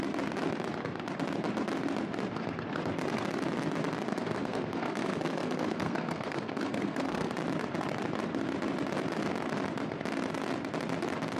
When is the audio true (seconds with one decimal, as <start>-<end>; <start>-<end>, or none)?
0.0-4.1; 7.3-11.4